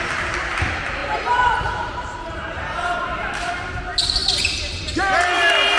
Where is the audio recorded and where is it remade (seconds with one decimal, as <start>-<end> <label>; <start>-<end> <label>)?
0.0-1.0 recorded; 1.0-3.5 remade; 3.5-5.8 recorded